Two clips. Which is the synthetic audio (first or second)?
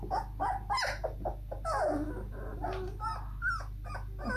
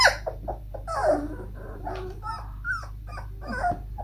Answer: second